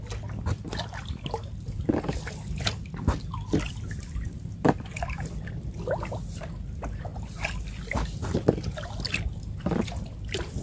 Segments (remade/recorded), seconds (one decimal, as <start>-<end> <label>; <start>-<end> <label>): 0.0-7.1 recorded; 7.1-7.9 remade; 7.9-10.6 recorded